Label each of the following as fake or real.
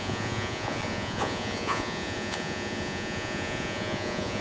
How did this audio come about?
fake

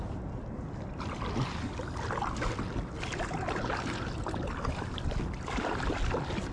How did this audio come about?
real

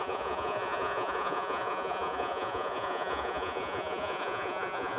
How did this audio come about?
fake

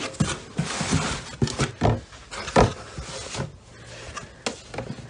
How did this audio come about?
real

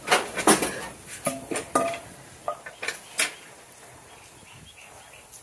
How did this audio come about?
real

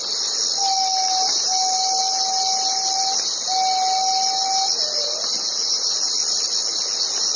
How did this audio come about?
real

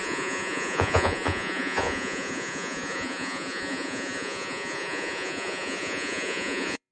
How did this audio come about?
fake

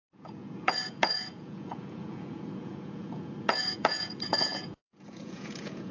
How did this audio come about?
fake